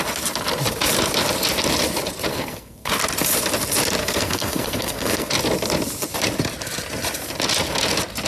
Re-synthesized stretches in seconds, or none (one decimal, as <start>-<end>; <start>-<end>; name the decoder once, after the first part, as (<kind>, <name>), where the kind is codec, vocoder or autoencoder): 2.3-2.9 (codec, SNAC); 4.0-5.3